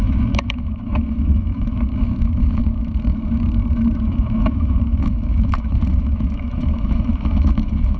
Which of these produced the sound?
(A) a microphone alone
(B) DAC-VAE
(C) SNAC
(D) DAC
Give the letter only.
B